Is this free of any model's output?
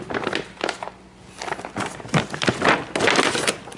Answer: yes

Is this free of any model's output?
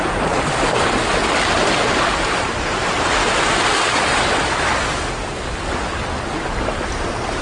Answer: yes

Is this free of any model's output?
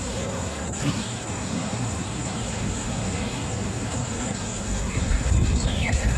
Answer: no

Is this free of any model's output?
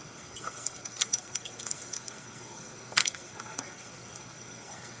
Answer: no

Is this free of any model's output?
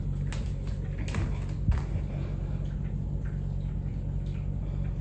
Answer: yes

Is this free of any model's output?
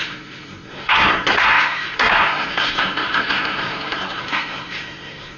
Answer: no